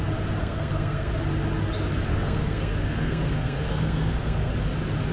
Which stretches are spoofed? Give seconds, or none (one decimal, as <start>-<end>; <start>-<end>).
0.4-1.1; 2.1-4.5